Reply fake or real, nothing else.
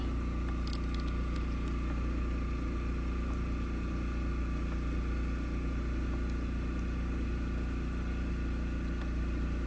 real